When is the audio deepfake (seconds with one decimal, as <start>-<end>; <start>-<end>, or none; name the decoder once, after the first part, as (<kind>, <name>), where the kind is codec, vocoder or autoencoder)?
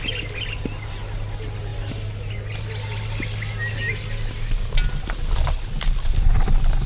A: none